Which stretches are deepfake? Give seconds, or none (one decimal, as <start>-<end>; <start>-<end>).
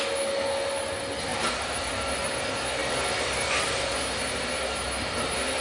1.3-1.9; 2.8-4.0